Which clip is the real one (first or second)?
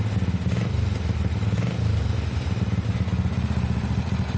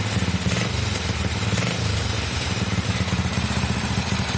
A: first